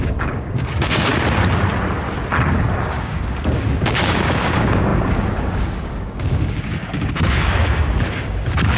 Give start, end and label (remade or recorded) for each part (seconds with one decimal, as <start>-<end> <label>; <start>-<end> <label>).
0.0-1.1 remade; 1.1-2.8 recorded; 2.8-8.8 remade